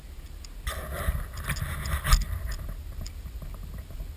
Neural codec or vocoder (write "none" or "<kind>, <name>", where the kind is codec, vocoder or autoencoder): none